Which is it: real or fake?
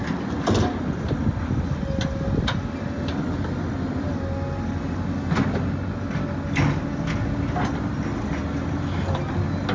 real